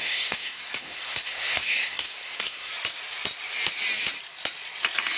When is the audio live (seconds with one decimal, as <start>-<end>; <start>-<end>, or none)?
2.7-5.2